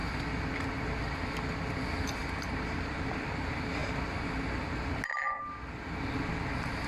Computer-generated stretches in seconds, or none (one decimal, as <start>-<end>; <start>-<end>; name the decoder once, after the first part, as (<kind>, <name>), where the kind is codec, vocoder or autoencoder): none